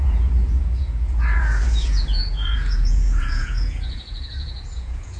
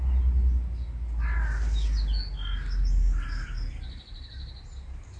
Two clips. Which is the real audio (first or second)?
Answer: second